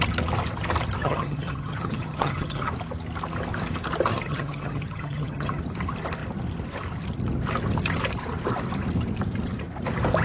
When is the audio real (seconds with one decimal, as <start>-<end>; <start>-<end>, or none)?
0.0-1.0; 2.7-4.1; 5.6-10.2